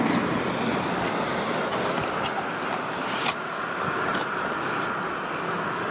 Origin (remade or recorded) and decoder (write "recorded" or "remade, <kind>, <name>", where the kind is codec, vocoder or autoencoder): recorded